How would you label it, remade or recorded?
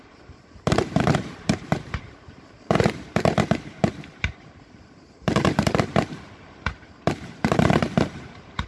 remade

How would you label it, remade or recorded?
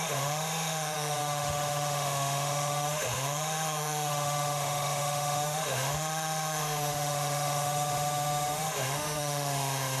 remade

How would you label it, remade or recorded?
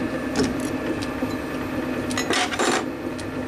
recorded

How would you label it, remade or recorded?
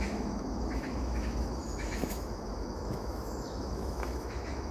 remade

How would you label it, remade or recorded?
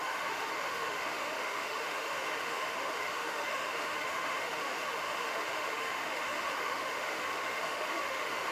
remade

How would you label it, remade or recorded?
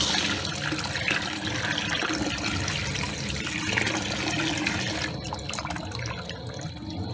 recorded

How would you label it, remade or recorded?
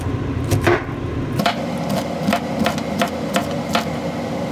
recorded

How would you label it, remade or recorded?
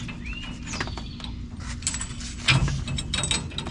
recorded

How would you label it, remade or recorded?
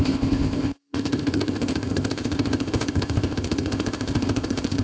remade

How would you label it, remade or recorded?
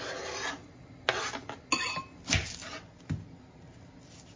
recorded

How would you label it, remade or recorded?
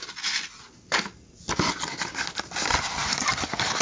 recorded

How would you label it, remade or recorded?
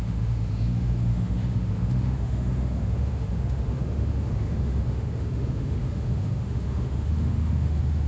remade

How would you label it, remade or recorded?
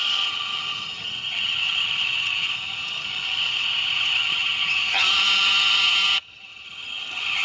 remade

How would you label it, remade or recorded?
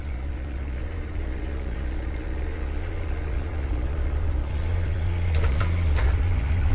remade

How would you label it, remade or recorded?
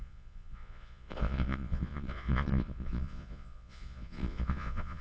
remade